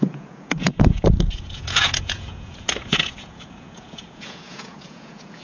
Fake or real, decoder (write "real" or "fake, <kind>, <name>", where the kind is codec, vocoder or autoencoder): fake, vocoder, Vocos